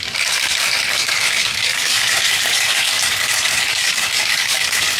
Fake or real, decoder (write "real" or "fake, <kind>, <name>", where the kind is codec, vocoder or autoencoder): fake, codec, DAC